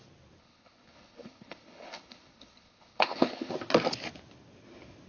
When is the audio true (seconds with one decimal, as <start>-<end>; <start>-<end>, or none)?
0.0-0.4; 3.5-5.1